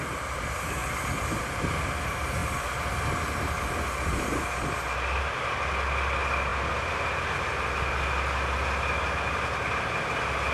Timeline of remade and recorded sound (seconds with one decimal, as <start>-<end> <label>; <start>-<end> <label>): 0.0-10.5 recorded